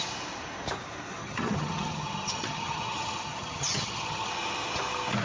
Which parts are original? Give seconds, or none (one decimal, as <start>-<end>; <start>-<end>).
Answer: 0.0-1.2; 4.3-5.2